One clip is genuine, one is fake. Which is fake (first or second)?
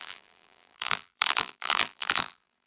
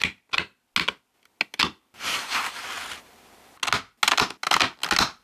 first